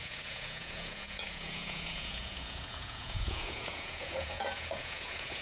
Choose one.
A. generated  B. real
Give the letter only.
A